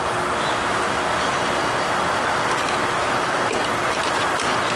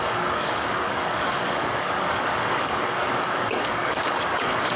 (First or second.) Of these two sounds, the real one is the first